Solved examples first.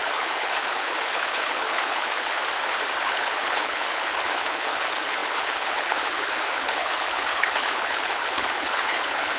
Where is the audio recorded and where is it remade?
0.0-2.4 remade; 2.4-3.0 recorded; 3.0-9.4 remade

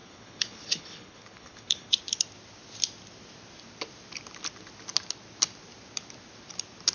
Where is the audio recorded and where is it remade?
0.0-1.9 remade; 1.9-6.9 recorded

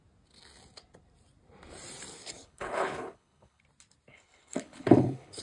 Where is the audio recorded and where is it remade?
0.0-2.1 recorded; 2.1-3.6 remade; 3.6-4.1 recorded; 4.1-5.4 remade

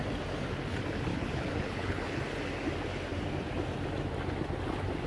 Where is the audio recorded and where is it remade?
0.0-1.1 recorded; 1.1-2.2 remade; 2.2-5.1 recorded

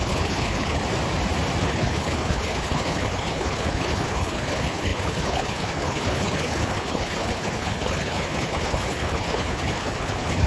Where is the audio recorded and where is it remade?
0.0-0.8 remade; 0.8-1.6 recorded; 1.6-10.5 remade

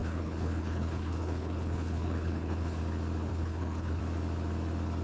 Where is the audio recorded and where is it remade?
0.0-2.8 remade; 2.8-3.3 recorded; 3.3-4.0 remade; 4.0-5.0 recorded